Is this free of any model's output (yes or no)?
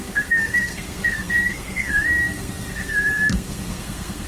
no